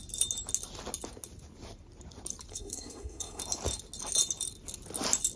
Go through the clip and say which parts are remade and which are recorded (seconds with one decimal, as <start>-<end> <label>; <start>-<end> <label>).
0.0-2.5 recorded; 2.5-3.4 remade; 3.4-5.4 recorded